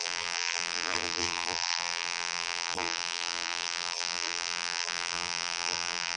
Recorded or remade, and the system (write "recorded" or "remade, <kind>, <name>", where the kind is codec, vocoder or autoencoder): remade, vocoder, BigVGAN v2